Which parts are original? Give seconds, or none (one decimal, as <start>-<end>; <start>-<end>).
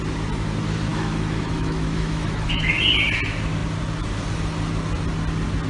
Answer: 0.0-0.9; 2.7-5.7